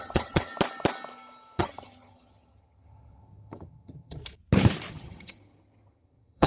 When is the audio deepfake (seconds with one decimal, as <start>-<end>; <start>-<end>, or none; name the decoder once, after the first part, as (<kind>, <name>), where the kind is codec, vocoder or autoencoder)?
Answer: 0.0-0.5 (vocoder, HiFi-GAN); 1.6-4.2; 4.9-6.5